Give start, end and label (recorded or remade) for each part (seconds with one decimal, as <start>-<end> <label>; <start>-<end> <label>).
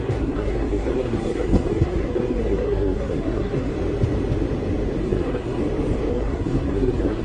0.0-3.7 remade; 3.7-5.0 recorded; 5.0-5.6 remade; 5.6-6.1 recorded; 6.1-7.2 remade